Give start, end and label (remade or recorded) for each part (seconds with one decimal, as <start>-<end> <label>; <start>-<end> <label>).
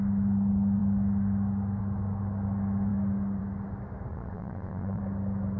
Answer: 0.0-4.1 recorded; 4.1-5.0 remade; 5.0-5.6 recorded